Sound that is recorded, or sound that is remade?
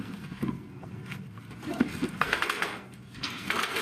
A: remade